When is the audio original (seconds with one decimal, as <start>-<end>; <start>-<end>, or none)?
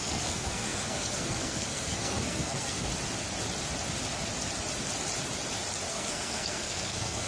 2.9-5.9